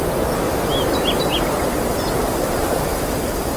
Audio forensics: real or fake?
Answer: real